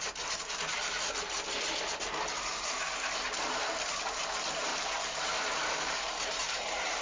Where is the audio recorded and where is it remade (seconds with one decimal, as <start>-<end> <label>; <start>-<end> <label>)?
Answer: 0.0-4.7 recorded; 4.7-7.0 remade